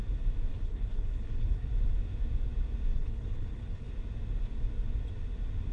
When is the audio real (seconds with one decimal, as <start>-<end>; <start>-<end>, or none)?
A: 0.0-0.5; 1.7-2.9; 3.9-5.7